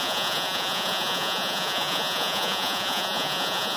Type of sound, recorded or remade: remade